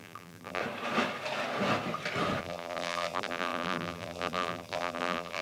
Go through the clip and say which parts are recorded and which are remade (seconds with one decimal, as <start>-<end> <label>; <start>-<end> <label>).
0.0-0.6 remade; 0.6-2.4 recorded; 2.4-5.4 remade